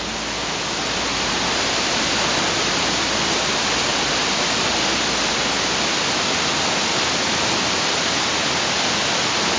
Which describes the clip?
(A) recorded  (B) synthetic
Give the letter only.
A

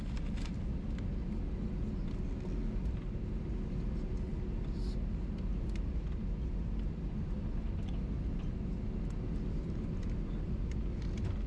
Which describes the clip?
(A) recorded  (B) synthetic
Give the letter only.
A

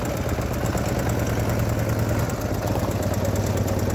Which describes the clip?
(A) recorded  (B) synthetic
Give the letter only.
A